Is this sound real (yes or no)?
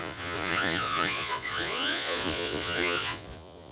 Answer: no